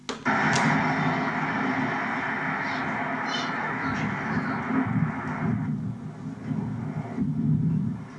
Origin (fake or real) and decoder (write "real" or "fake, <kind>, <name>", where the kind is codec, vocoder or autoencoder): real